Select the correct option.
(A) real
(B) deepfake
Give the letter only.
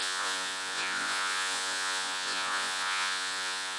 B